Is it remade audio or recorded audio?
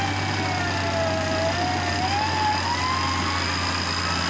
recorded